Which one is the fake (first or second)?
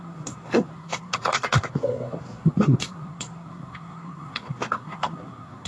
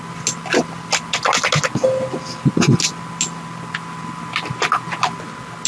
first